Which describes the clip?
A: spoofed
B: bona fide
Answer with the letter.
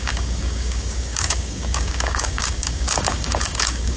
A